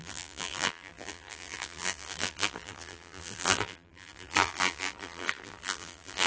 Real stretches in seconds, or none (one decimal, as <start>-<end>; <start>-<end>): none